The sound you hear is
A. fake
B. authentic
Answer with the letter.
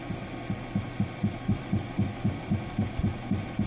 A